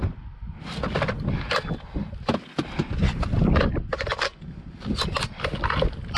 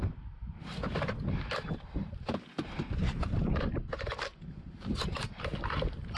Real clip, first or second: first